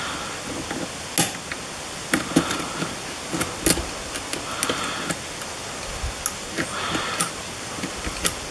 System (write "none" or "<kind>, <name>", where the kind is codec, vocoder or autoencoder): none